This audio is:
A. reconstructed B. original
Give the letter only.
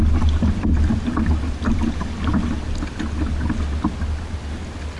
B